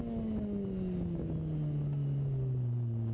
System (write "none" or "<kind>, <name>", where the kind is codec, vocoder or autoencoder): none